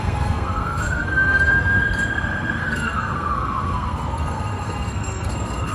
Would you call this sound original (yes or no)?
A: no